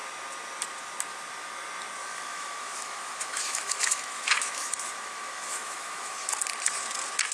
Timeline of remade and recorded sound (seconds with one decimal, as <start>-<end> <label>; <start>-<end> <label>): 0.0-2.0 recorded; 2.0-6.3 remade; 6.3-7.3 recorded